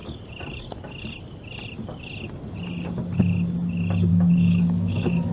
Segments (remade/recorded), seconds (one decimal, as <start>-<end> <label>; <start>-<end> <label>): 0.0-4.1 recorded; 4.1-5.3 remade